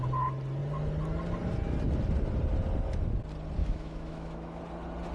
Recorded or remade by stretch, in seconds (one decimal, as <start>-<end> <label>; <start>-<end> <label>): 0.0-3.6 recorded; 3.6-4.6 remade; 4.6-5.1 recorded